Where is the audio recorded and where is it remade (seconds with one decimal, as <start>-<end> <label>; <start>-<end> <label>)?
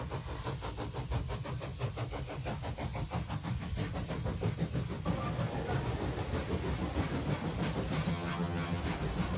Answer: 0.0-8.1 recorded; 8.1-8.8 remade; 8.8-9.4 recorded